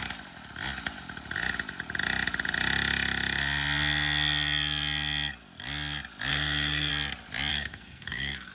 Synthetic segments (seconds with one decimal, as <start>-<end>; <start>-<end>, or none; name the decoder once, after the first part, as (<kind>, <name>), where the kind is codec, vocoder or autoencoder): 6.3-6.9 (codec, SNAC); 7.5-8.5